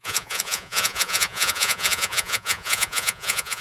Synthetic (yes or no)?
yes